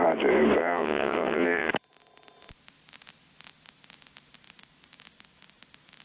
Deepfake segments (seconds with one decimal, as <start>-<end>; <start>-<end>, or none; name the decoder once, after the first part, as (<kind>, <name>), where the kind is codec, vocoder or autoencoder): 0.6-1.7 (vocoder, WaveNeXt)